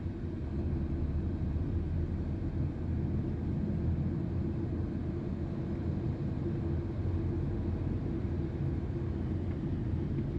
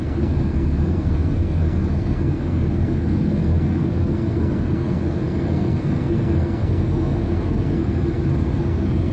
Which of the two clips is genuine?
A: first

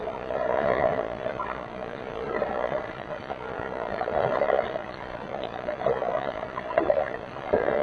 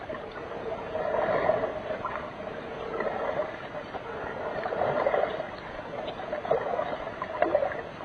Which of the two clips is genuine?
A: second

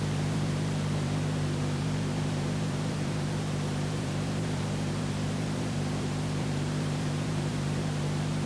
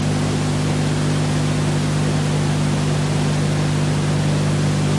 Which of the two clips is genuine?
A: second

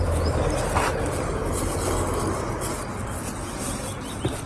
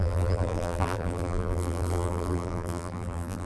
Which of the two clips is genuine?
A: first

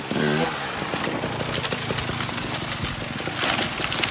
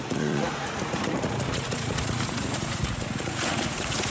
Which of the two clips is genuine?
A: first